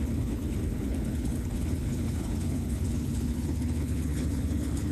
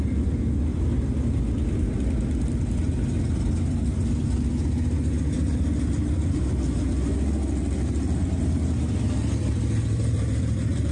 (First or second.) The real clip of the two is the second